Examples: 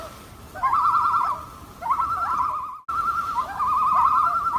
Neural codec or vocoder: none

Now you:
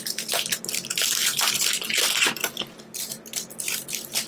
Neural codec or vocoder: none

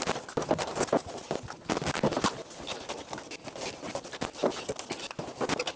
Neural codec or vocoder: none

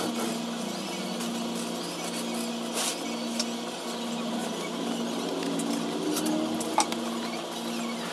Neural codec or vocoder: none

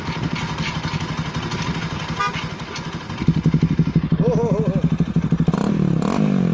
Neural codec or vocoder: none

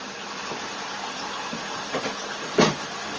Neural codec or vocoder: none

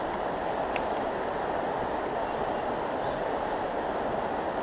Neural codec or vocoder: none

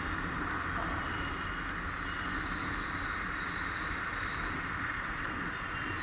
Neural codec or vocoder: none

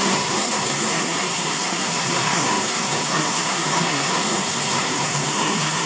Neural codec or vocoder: codec, SNAC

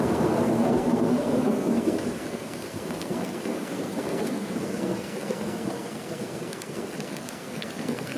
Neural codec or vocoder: codec, SNAC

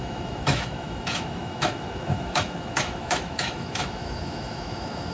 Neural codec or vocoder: autoencoder, DAC-VAE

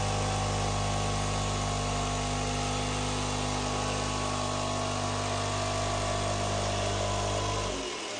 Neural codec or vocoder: none